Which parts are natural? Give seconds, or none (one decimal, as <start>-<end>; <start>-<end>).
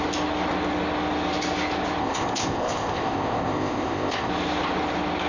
0.0-2.0; 4.3-5.3